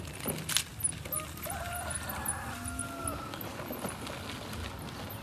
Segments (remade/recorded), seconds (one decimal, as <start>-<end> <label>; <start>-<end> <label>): 0.0-5.2 recorded